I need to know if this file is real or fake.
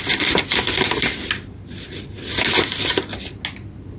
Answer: real